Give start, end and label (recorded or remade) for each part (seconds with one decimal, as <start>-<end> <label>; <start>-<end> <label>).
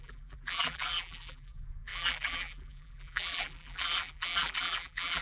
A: 0.0-5.2 remade